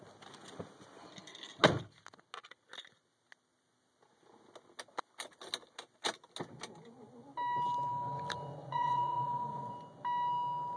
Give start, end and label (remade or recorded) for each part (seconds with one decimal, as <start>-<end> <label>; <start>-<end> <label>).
0.0-8.6 recorded; 8.6-9.7 remade; 9.7-10.8 recorded